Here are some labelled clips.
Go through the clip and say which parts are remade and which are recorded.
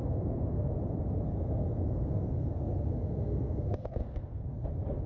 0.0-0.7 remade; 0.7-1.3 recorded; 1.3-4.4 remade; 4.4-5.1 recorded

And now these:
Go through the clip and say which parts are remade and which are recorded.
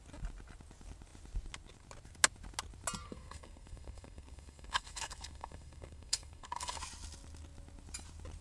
0.0-3.0 recorded; 3.0-6.8 remade; 6.8-8.4 recorded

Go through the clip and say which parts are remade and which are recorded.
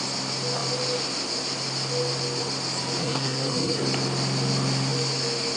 0.0-3.0 recorded; 3.0-3.8 remade; 3.8-5.6 recorded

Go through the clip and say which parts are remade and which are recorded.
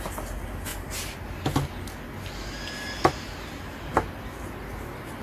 0.0-5.2 recorded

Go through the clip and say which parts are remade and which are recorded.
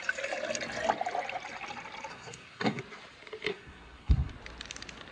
0.0-2.1 recorded; 2.1-2.8 remade; 2.8-3.5 recorded; 3.5-4.3 remade; 4.3-5.1 recorded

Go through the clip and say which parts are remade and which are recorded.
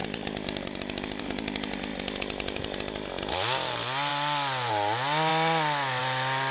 0.0-1.2 remade; 1.2-1.9 recorded; 1.9-3.0 remade; 3.0-6.5 recorded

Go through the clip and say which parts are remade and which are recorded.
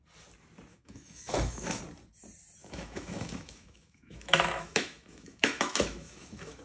0.0-0.7 recorded; 0.7-1.8 remade; 1.8-2.6 recorded; 2.6-6.6 remade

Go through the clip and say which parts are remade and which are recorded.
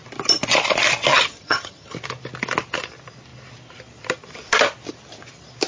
0.0-1.1 recorded; 1.1-1.9 remade; 1.9-5.7 recorded